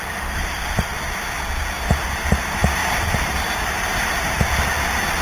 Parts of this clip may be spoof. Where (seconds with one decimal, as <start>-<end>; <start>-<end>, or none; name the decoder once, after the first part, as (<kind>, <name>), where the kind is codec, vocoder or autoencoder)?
2.8-4.1 (vocoder, BigVGAN v2)